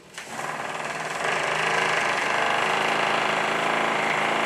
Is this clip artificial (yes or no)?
no